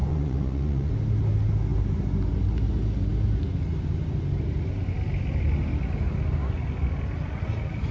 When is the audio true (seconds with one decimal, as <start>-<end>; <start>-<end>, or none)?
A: 0.9-7.9